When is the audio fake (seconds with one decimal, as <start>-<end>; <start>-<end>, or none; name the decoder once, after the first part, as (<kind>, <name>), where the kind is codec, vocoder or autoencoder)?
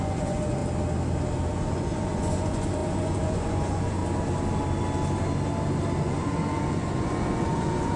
0.0-0.6 (vocoder, Vocos); 1.5-4.0; 6.0-8.0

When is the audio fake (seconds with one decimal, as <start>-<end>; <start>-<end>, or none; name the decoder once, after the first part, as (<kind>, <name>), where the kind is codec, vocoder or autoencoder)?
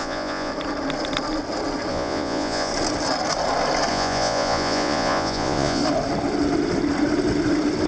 0.0-0.5 (vocoder, Vocos); 1.9-2.7; 3.9-5.8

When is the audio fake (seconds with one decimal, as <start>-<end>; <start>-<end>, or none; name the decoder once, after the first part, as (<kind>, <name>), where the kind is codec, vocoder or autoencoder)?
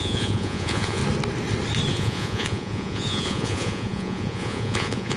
0.0-1.0 (vocoder, Vocos); 1.9-5.2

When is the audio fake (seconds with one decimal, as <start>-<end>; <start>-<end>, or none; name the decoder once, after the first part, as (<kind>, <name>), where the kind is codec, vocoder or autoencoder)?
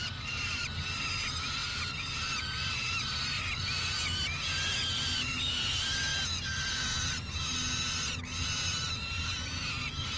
none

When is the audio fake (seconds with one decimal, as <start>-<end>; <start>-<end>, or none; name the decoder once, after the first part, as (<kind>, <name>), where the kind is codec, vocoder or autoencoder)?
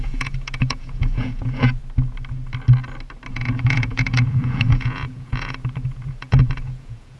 0.0-1.8 (vocoder, Vocos); 3.3-7.2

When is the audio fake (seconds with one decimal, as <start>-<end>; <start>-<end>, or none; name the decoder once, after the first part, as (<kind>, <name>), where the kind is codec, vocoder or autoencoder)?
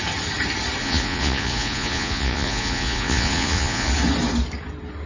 0.8-3.9 (vocoder, Vocos)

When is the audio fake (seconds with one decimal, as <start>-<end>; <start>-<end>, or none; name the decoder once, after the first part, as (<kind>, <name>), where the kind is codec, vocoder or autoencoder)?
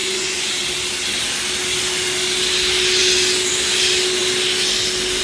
0.0-0.5 (vocoder, Vocos)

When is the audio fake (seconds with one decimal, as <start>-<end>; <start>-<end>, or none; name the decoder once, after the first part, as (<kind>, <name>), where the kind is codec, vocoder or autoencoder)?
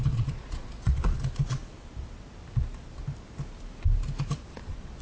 0.0-1.6 (vocoder, Vocos); 4.6-5.0